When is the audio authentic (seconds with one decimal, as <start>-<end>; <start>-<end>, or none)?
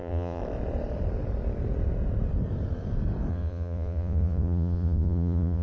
0.4-3.3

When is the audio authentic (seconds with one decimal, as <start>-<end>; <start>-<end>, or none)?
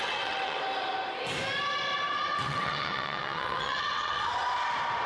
0.6-2.4; 4.3-5.1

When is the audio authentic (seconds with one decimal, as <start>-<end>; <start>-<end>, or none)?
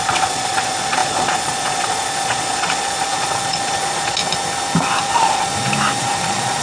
4.2-5.0; 5.5-6.0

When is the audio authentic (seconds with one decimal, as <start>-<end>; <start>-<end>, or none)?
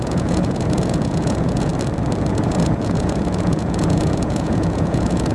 1.7-2.3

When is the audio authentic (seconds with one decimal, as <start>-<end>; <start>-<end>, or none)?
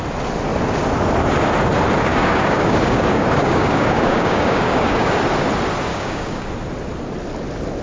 0.0-2.1; 5.2-5.9; 6.5-7.8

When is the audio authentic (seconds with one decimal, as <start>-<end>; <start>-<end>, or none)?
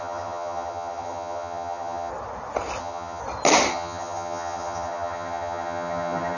2.1-2.8; 3.2-3.7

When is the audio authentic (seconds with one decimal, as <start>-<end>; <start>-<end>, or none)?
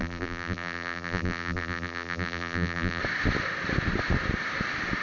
3.0-5.0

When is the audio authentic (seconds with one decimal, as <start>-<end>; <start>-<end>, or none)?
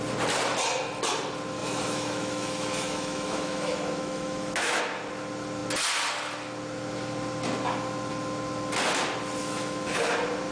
0.0-1.6; 4.8-9.4; 10.1-10.5